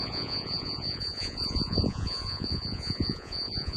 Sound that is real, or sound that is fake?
fake